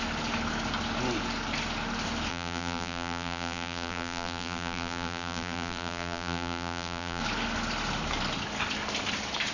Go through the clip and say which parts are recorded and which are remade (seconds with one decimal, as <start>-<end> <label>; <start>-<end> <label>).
0.0-2.3 recorded; 2.3-7.2 remade; 7.2-9.5 recorded